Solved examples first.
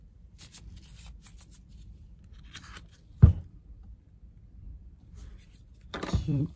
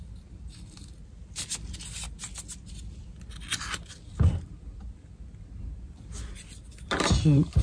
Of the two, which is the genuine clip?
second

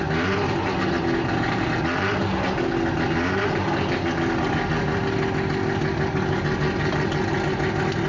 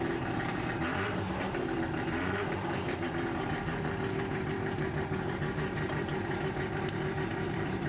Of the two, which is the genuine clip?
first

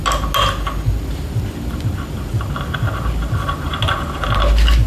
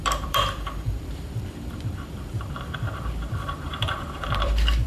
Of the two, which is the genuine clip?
first